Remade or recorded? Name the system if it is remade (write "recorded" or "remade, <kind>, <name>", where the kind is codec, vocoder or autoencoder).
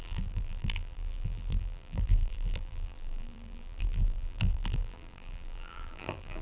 remade, vocoder, BigVGAN v2